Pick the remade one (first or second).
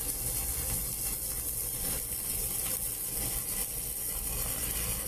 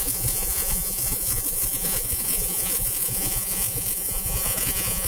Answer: second